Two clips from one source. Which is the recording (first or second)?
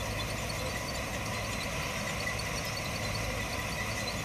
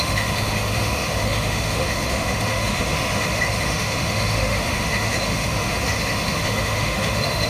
first